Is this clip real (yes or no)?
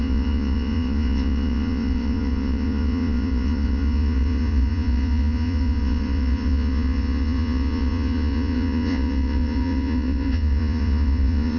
no